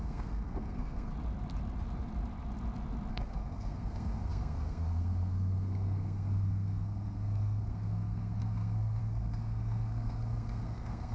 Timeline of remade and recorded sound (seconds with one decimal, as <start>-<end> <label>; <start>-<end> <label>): 0.0-1.1 remade; 1.1-3.1 recorded; 3.1-11.1 remade